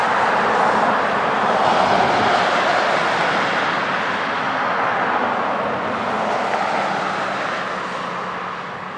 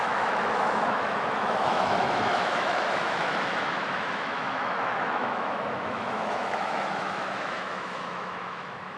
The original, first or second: first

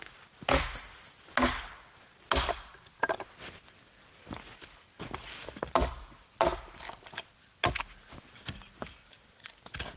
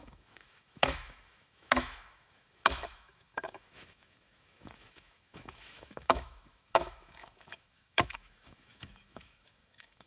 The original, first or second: first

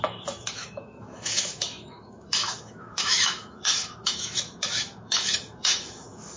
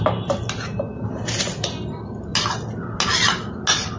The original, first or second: second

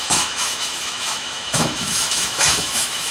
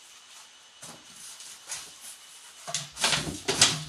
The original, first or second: second